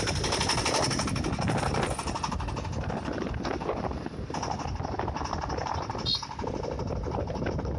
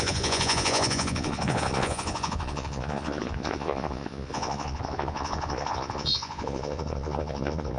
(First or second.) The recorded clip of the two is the first